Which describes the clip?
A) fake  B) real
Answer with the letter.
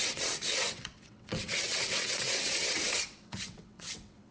A